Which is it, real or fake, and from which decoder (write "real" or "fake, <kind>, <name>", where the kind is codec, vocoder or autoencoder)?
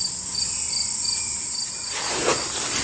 real